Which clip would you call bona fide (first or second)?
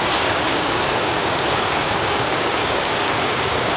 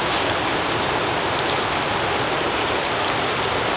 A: second